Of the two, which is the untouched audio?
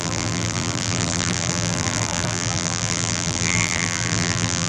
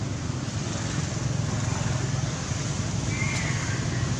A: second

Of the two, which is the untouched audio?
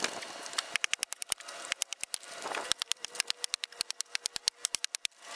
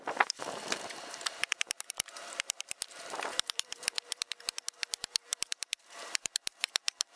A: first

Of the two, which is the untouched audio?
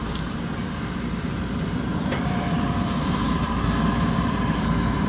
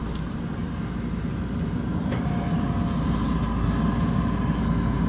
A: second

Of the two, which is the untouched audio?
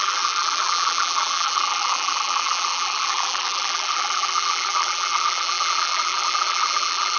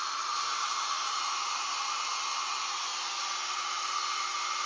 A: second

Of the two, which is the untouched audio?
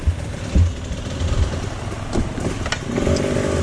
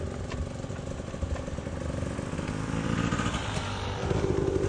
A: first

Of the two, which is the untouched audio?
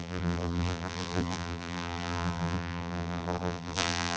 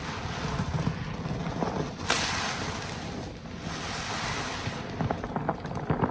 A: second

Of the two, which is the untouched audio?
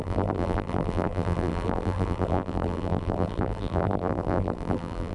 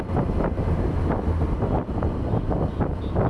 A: second